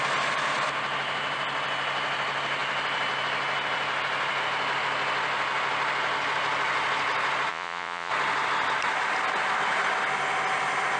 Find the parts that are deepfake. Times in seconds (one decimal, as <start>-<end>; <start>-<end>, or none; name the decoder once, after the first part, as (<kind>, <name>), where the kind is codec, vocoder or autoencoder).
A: 7.5-8.1 (vocoder, Vocos)